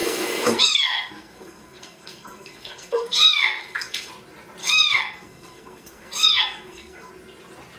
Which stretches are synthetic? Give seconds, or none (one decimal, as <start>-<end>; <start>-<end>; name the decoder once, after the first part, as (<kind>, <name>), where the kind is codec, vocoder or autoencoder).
0.0-4.1 (codec, SNAC); 4.6-7.1